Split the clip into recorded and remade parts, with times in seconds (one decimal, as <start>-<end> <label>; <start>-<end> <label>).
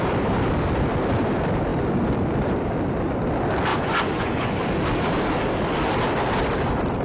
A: 0.0-3.7 recorded; 3.7-4.6 remade; 4.6-7.0 recorded